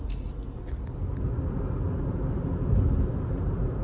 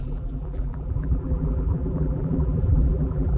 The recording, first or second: first